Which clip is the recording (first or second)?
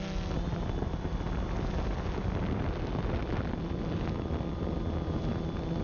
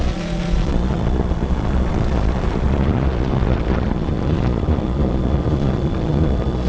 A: first